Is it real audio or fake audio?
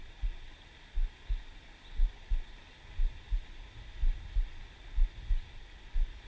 real